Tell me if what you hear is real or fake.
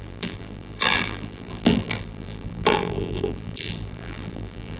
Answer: fake